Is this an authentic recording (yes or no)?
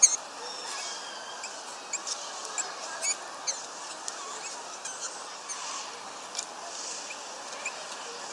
yes